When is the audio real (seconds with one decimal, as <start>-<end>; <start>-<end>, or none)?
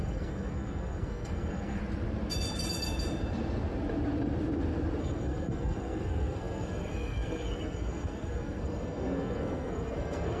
1.8-5.0